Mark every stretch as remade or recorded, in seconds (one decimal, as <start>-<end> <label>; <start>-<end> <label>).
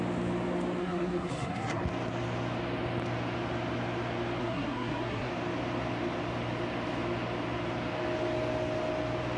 0.0-0.8 recorded; 0.8-1.8 remade; 1.8-4.4 recorded; 4.4-5.3 remade; 5.3-9.4 recorded